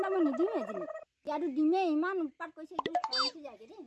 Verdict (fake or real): real